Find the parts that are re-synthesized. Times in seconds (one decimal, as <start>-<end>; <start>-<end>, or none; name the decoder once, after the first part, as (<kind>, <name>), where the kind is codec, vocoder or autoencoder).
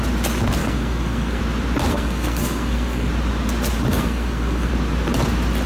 0.6-1.4 (codec, SNAC); 1.9-3.1; 3.9-4.7